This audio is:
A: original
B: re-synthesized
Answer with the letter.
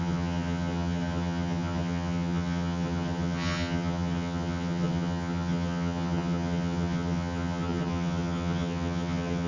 B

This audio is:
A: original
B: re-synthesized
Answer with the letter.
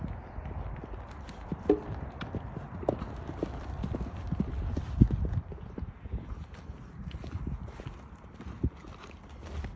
A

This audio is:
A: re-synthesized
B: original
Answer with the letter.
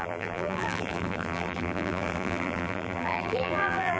A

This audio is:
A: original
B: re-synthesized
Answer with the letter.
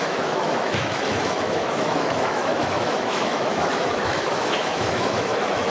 B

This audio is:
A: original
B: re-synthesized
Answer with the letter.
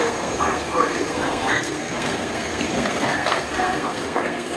B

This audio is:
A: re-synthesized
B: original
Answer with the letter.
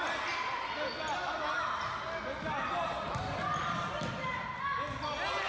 B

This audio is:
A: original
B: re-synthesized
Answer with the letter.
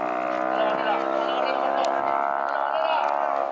A